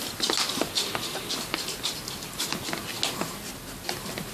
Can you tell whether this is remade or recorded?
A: recorded